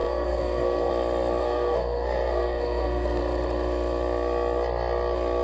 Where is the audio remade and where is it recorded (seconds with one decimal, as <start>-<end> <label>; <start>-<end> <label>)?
0.0-0.9 remade; 0.9-1.4 recorded; 1.4-3.2 remade; 3.2-5.4 recorded